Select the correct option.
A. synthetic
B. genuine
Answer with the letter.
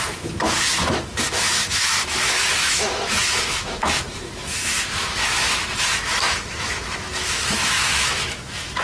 A